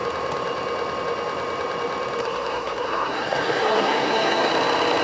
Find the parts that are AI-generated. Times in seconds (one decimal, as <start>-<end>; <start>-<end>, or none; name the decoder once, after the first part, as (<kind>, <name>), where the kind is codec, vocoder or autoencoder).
2.2-4.5 (codec, SNAC)